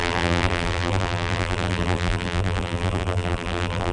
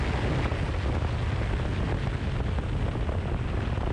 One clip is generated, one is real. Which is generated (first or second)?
first